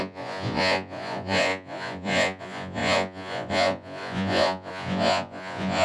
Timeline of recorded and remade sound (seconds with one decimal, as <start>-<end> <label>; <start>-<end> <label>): 0.0-5.8 remade